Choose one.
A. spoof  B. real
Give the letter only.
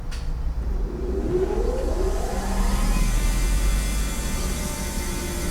B